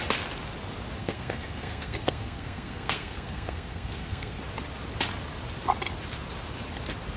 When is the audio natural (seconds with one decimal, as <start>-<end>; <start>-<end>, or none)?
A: 0.0-1.0; 4.4-7.2